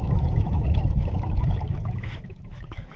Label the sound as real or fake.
fake